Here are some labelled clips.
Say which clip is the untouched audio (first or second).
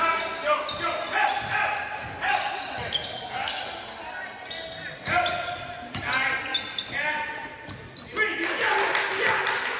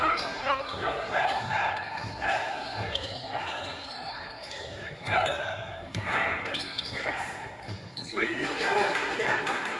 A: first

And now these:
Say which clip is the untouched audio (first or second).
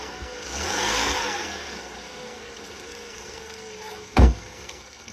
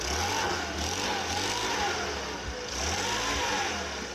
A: second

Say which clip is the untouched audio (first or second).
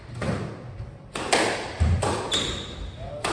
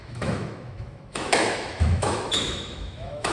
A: first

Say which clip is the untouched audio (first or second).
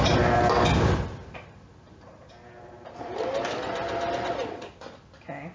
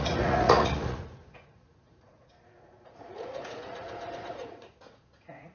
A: first